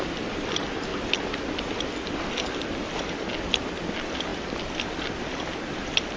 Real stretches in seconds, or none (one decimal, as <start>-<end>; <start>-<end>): 0.0-6.2